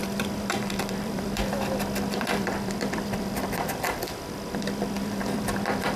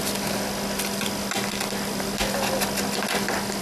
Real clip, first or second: second